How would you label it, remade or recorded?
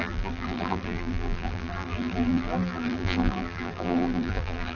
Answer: remade